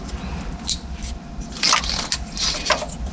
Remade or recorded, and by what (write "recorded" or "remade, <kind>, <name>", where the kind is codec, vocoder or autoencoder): recorded